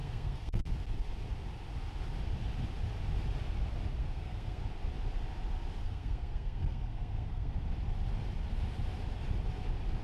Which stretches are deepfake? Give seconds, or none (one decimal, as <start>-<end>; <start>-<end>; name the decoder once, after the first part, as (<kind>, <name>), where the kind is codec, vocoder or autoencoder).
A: 0.0-0.7 (codec, SNAC); 4.0-4.6; 5.8-7.5